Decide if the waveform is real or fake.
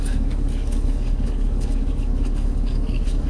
fake